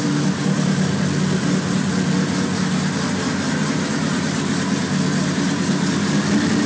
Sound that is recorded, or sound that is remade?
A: recorded